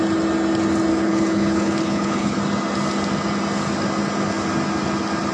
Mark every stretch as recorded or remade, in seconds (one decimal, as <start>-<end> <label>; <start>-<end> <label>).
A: 0.0-0.9 recorded; 0.9-2.4 remade; 2.4-5.3 recorded